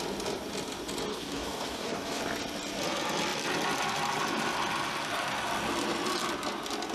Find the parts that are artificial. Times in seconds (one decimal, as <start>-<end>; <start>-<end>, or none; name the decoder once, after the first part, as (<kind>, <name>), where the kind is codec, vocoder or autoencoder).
1.1-2.2 (codec, DAC)